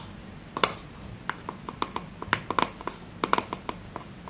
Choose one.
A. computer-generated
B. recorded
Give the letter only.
B